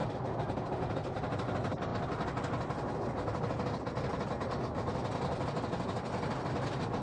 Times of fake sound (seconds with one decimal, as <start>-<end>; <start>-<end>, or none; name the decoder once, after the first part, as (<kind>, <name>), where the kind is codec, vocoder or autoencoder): none